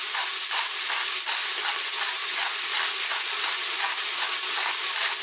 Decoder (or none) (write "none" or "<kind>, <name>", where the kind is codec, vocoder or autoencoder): none